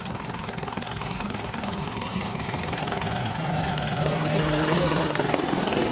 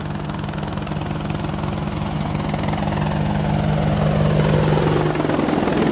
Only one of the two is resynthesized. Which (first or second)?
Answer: first